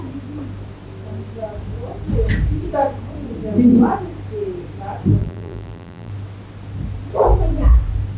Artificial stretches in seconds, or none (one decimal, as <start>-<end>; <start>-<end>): 5.2-6.1